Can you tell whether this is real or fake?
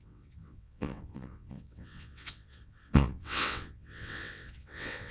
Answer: fake